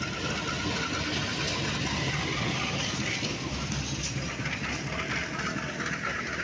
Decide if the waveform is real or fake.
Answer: real